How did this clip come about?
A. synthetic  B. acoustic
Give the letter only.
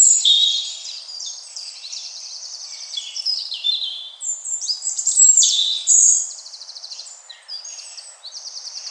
A